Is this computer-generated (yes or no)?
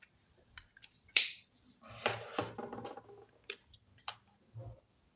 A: yes